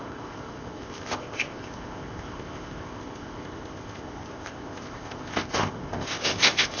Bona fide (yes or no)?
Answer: no